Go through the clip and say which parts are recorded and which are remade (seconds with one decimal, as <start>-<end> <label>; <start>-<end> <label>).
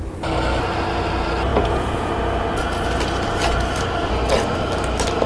0.0-1.5 recorded; 1.5-2.1 remade; 2.1-5.3 recorded